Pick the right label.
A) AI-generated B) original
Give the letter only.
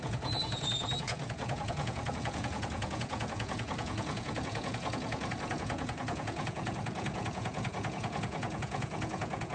A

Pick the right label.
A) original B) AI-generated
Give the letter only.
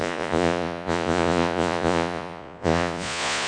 B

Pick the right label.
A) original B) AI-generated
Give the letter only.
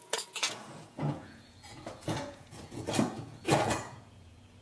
B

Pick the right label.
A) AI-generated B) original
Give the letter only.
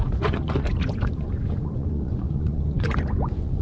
A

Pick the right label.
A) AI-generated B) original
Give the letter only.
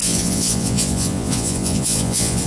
A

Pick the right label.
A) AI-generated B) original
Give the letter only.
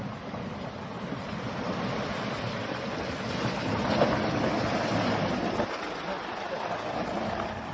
B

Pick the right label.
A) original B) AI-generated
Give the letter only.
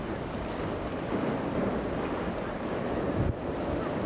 A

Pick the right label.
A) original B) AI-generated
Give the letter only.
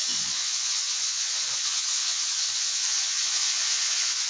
B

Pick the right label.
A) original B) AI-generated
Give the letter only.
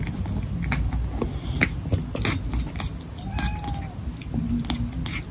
A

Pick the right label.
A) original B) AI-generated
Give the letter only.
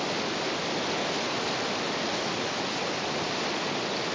A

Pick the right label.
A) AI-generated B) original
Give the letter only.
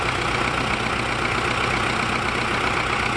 B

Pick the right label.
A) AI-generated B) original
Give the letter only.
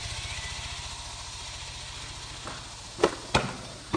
B